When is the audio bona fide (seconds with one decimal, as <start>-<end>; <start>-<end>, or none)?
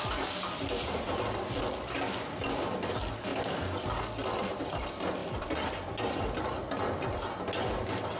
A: 0.0-8.2